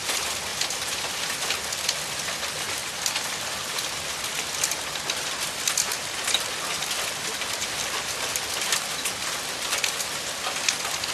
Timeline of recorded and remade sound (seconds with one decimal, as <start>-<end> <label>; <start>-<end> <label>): 0.0-0.5 recorded; 0.5-1.5 remade; 1.5-2.8 recorded; 2.8-5.3 remade; 5.3-11.1 recorded